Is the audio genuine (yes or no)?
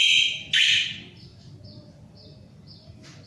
yes